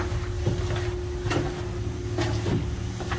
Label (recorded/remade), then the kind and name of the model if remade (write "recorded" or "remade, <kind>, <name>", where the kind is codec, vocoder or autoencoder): recorded